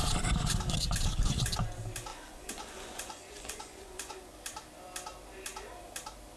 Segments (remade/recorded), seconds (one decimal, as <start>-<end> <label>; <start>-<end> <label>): 0.0-2.1 recorded; 2.1-4.2 remade; 4.2-6.4 recorded